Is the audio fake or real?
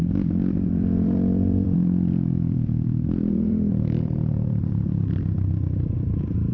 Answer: fake